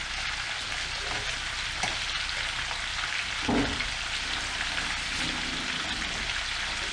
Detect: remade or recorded recorded